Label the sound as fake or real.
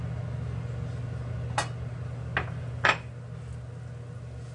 real